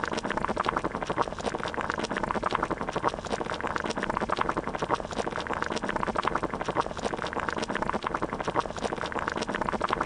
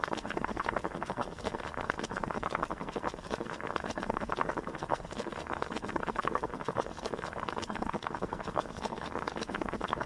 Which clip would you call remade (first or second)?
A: second